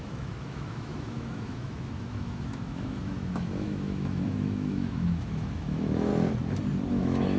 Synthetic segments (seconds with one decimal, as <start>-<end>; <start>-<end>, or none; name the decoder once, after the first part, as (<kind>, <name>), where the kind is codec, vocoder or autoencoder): 0.0-6.1 (autoencoder, DAC-VAE); 6.9-7.4